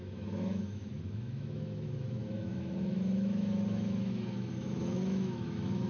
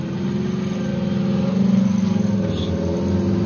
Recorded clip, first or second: second